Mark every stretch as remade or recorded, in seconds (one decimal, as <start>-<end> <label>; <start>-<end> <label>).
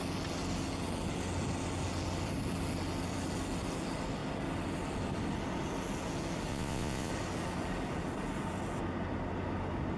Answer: 0.0-6.5 recorded; 6.5-7.1 remade; 7.1-10.0 recorded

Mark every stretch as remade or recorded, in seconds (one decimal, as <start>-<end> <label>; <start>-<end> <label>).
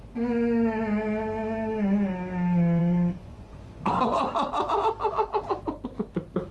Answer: 0.0-2.8 recorded; 2.8-4.3 remade; 4.3-6.5 recorded